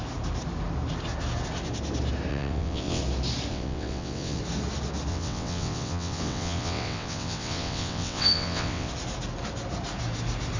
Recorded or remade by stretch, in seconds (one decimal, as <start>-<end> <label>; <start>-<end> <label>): 0.0-2.3 recorded; 2.3-3.0 remade; 3.0-3.5 recorded; 3.5-4.4 remade; 4.4-5.1 recorded; 5.1-8.9 remade; 8.9-10.6 recorded